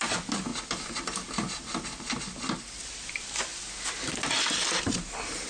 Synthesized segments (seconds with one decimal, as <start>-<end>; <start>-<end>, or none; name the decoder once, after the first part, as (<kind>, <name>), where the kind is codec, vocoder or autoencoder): 0.0-0.5 (vocoder, BigVGAN v2); 2.9-3.5; 4.8-5.5